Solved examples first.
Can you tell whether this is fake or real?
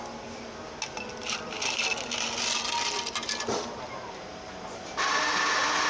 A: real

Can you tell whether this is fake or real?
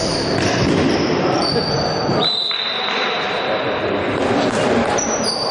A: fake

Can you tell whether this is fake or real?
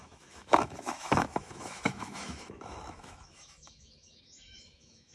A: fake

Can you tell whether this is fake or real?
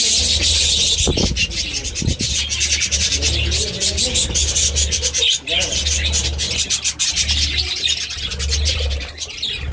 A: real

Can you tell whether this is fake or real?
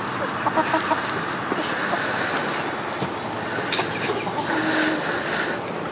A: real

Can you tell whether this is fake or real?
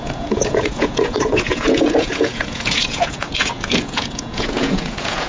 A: fake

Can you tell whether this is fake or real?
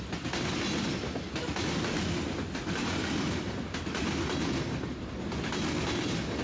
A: real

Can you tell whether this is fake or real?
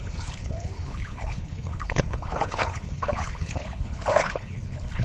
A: fake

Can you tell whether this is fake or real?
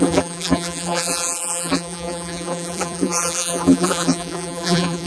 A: fake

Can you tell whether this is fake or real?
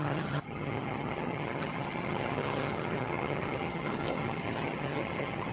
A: fake